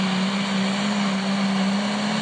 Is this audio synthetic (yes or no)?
no